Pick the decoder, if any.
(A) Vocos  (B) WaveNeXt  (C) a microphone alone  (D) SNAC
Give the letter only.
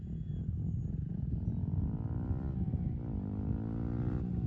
C